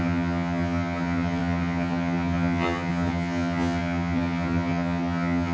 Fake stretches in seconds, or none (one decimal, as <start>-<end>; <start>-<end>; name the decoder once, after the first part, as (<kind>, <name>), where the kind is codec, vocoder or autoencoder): 0.0-5.5 (vocoder, HiFi-GAN)